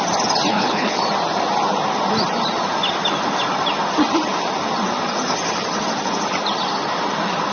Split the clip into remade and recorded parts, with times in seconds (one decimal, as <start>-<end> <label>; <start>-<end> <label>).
0.0-0.5 recorded; 0.5-1.0 remade; 1.0-7.5 recorded